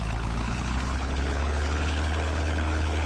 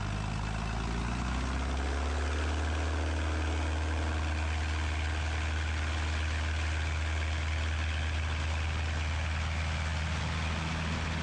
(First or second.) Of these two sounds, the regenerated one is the first